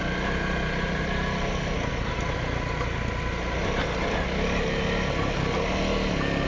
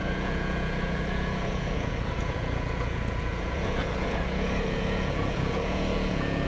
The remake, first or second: second